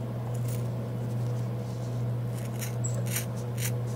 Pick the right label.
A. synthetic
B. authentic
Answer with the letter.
B